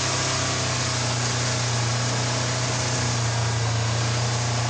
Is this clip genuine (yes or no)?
yes